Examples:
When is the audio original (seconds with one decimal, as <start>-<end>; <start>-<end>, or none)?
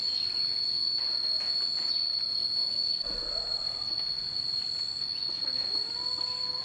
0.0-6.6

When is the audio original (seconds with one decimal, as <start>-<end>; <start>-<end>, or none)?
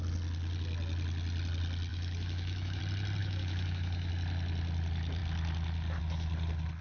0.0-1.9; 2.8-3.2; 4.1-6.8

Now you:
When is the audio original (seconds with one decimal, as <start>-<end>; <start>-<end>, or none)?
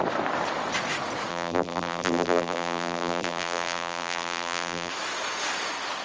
0.0-1.3; 4.9-6.0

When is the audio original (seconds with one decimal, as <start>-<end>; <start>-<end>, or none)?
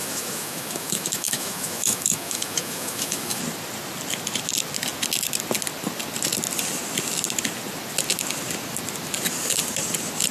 3.4-10.3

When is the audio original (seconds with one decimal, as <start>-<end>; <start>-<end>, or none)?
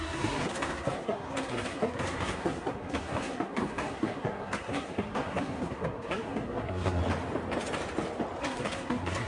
7.0-8.4